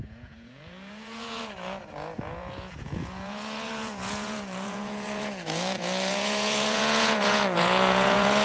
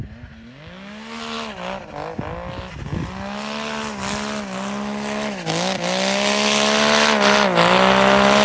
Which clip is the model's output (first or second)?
first